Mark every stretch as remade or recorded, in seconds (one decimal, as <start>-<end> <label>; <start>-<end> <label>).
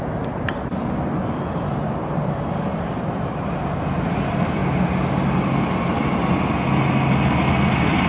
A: 0.0-8.1 recorded